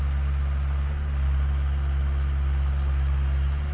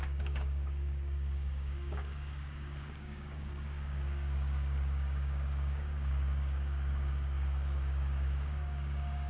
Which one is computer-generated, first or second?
second